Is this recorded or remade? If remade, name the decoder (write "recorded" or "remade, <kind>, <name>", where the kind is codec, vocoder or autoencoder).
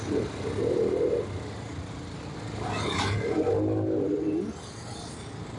recorded